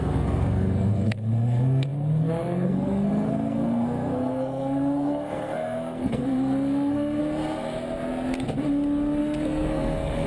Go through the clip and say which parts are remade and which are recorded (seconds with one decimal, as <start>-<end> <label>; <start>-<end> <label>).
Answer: 0.0-7.2 remade; 7.2-9.2 recorded; 9.2-10.3 remade